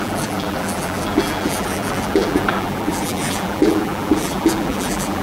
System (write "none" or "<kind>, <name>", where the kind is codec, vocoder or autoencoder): vocoder, BigVGAN v2